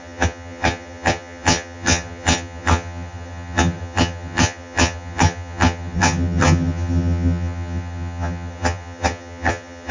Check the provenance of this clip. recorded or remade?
remade